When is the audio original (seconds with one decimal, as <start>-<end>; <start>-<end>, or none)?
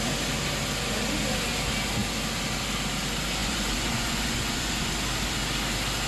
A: 0.0-3.4; 4.9-6.1